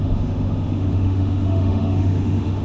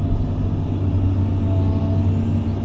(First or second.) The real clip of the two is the second